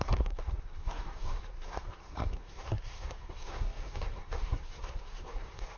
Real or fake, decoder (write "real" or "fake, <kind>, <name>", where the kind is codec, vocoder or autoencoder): fake, codec, SNAC